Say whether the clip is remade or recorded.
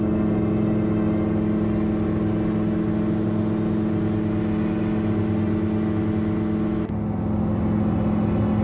recorded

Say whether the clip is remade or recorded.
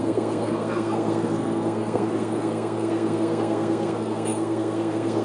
remade